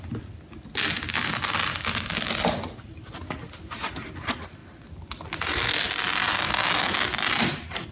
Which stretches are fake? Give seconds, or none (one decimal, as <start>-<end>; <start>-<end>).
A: 1.7-2.3